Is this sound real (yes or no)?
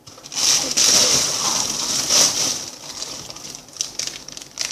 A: yes